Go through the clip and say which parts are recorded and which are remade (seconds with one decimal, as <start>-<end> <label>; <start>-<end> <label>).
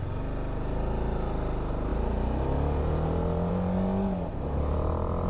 0.0-5.3 recorded